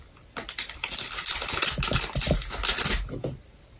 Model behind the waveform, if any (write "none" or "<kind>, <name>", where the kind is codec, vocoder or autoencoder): none